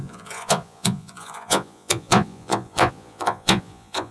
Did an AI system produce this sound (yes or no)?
yes